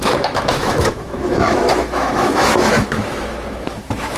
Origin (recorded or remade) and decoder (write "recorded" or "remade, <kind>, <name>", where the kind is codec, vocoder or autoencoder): remade, autoencoder, DAC-VAE